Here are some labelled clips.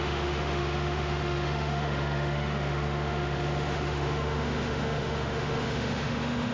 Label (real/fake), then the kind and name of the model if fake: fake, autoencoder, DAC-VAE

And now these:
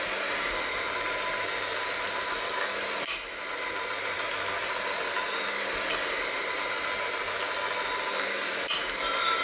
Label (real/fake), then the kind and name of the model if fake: real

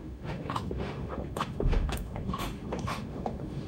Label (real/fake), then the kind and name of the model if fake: fake, autoencoder, DAC-VAE